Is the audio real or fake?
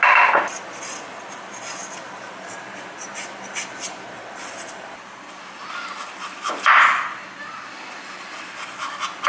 real